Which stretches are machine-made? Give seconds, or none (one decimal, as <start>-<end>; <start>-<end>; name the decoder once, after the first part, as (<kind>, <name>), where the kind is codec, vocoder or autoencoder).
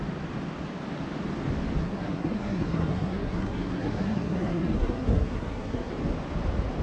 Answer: 1.8-5.9 (codec, SNAC)